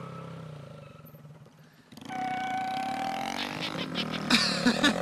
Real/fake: real